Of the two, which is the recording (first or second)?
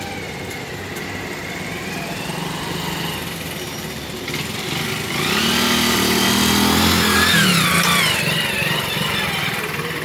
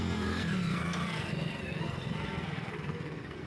first